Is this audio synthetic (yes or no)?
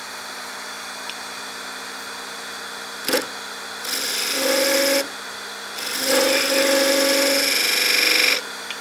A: no